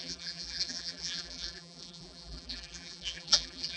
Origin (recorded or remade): remade